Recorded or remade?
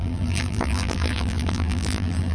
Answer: remade